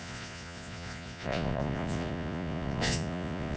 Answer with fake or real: fake